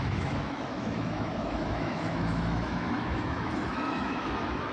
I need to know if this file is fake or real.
fake